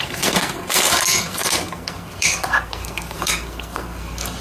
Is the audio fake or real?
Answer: fake